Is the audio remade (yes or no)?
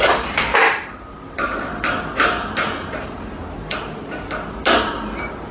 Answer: no